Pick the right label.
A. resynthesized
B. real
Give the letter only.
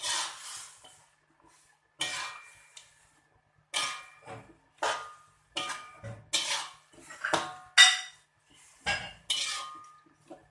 B